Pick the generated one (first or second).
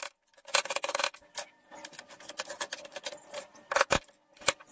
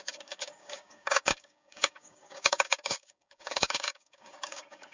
second